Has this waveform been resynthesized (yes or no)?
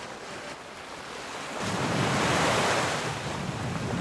no